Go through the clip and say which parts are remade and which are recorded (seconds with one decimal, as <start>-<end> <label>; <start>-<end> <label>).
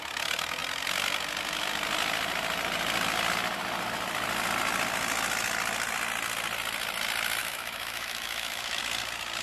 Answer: 0.0-7.4 recorded; 7.4-8.8 remade; 8.8-9.4 recorded